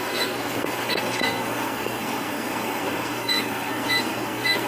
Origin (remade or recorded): remade